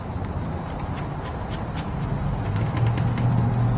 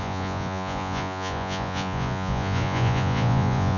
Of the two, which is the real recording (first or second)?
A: first